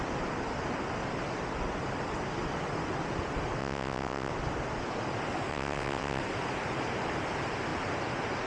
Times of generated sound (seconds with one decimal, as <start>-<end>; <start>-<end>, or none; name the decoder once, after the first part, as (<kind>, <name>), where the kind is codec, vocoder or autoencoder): 3.6-4.3 (vocoder, WaveNeXt); 5.5-6.2